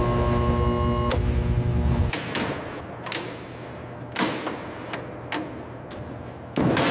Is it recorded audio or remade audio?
recorded